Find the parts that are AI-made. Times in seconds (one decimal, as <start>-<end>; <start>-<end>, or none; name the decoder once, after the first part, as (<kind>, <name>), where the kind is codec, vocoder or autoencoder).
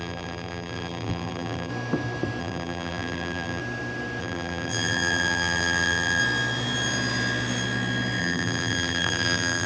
0.0-1.7 (vocoder, BigVGAN v2); 2.4-3.6; 4.2-6.2; 8.2-9.7